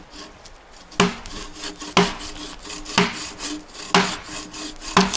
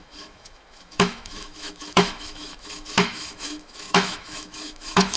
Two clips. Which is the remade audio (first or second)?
second